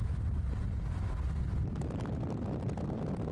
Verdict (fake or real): real